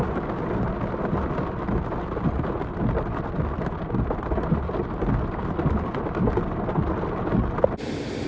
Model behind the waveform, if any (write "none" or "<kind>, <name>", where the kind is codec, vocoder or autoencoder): none